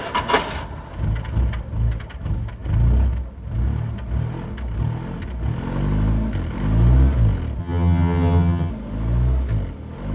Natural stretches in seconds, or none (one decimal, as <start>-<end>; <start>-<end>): 0.0-7.6; 8.7-10.1